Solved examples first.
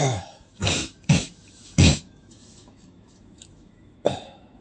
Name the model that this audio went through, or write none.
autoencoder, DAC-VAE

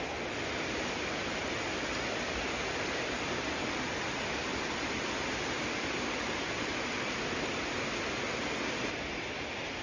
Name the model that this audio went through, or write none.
none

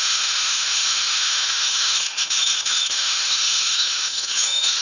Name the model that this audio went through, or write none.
autoencoder, DAC-VAE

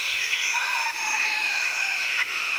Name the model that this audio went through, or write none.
autoencoder, DAC-VAE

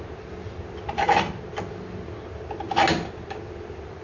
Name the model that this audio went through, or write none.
none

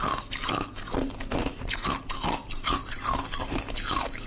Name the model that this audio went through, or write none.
none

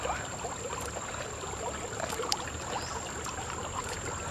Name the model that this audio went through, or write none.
none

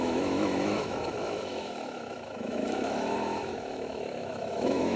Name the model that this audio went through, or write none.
autoencoder, DAC-VAE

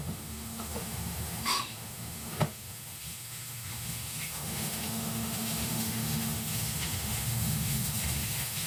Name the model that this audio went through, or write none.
autoencoder, DAC-VAE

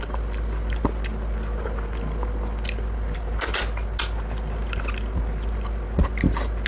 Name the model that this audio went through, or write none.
none